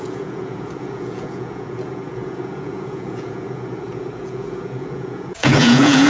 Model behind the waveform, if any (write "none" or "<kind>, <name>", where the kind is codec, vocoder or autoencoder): vocoder, Vocos